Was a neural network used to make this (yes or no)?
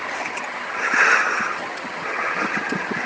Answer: yes